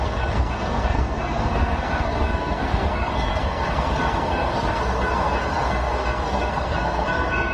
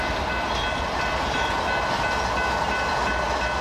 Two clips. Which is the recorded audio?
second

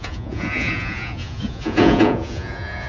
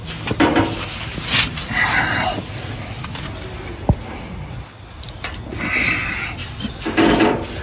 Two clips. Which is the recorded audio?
second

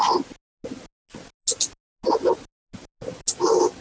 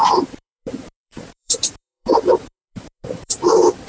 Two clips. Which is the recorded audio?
first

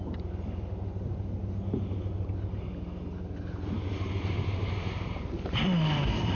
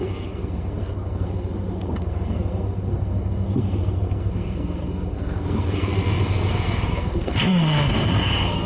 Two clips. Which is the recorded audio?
first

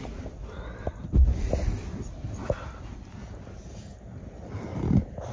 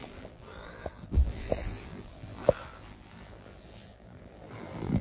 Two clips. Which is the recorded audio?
first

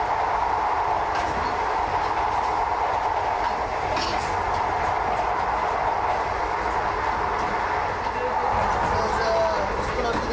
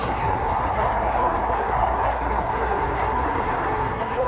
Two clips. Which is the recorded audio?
first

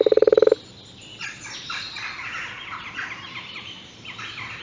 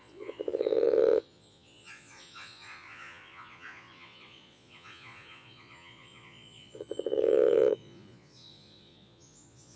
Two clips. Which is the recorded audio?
first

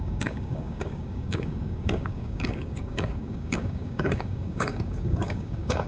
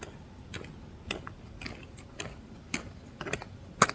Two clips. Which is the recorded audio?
second